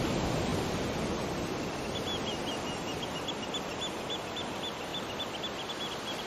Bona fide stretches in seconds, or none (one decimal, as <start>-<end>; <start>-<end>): 0.0-6.3